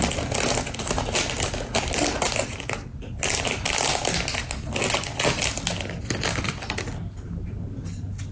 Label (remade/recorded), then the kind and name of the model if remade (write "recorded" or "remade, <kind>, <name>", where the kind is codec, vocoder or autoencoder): recorded